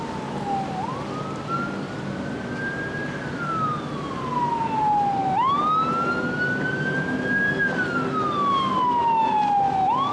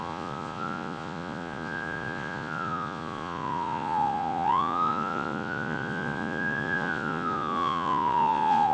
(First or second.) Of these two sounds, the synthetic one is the second